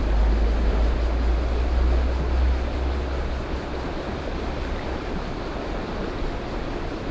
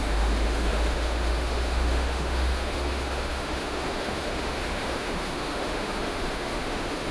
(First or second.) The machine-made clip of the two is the second